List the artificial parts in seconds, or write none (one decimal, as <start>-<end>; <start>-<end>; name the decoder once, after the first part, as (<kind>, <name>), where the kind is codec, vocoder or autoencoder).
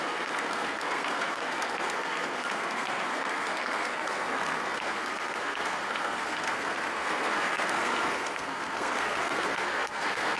0.0-10.4 (codec, SNAC)